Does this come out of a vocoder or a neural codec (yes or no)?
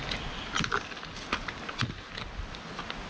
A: no